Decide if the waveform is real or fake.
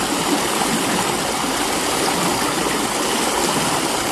real